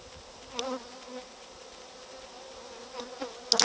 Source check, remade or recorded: recorded